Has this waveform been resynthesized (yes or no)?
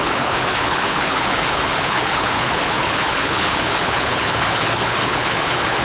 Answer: yes